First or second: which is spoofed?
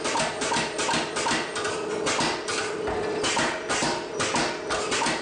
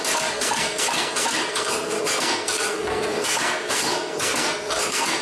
second